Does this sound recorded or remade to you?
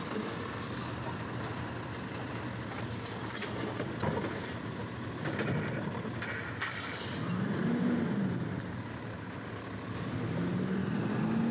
recorded